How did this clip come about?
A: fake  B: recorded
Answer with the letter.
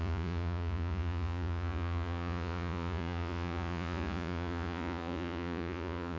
A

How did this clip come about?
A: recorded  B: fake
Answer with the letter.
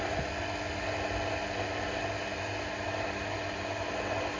A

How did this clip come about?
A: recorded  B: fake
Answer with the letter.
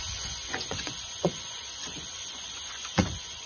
B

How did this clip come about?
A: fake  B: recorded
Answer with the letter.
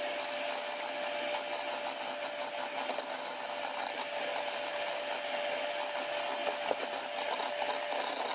B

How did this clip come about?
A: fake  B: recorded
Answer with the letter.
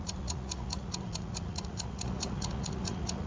A